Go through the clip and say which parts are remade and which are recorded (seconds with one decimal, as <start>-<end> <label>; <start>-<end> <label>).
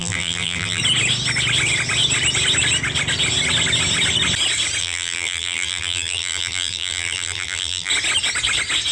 0.0-0.8 remade; 0.8-4.8 recorded; 4.8-7.9 remade; 7.9-8.9 recorded